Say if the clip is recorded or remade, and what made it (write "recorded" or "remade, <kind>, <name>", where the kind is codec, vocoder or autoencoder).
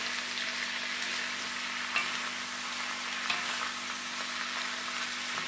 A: recorded